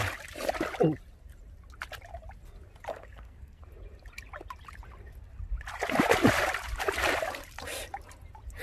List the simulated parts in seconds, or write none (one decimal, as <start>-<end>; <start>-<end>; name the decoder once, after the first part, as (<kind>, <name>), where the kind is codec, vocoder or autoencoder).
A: 2.9-3.6 (codec, SNAC)